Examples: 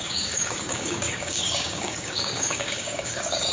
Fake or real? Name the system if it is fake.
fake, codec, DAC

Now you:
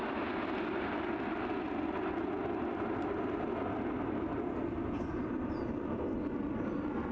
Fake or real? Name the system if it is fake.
real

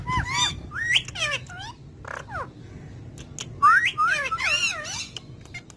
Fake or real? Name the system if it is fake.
real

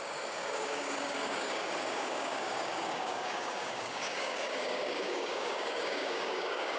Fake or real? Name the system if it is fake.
fake, codec, DAC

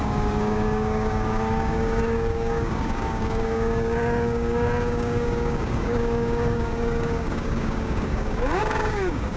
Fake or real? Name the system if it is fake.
fake, codec, DAC